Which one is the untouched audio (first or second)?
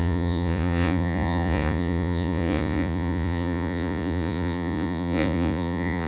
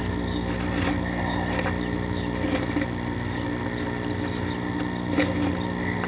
second